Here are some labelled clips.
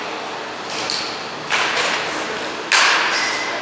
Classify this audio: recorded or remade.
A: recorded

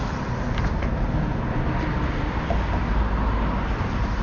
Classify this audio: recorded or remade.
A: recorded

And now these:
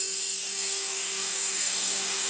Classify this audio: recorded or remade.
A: remade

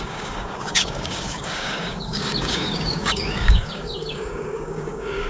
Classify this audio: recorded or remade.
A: remade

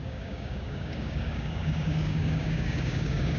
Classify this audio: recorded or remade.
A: remade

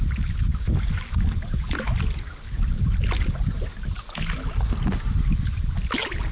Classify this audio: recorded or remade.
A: recorded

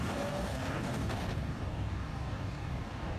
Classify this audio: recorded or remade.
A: remade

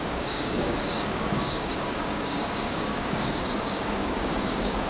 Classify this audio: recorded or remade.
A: remade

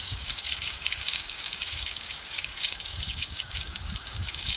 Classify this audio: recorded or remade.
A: remade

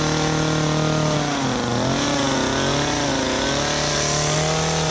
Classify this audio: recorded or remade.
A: recorded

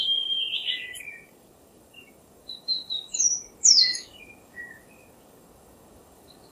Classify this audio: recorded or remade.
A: remade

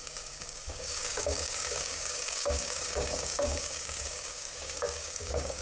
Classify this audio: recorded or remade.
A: remade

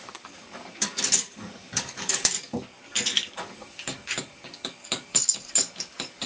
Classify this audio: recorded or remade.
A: remade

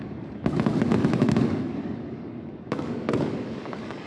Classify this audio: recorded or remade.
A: remade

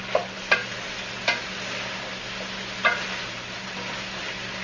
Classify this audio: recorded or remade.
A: recorded